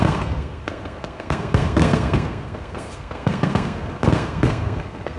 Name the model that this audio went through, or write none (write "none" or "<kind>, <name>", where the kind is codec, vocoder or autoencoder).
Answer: codec, SNAC